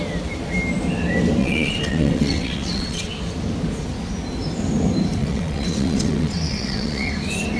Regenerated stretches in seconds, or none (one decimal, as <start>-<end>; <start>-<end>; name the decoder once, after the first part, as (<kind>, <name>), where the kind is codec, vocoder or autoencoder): 1.4-3.1 (vocoder, WaveNeXt); 5.2-7.1